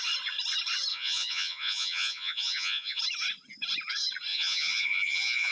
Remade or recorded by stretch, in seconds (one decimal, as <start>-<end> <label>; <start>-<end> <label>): 0.0-0.9 recorded; 0.9-3.0 remade; 3.0-4.3 recorded; 4.3-5.5 remade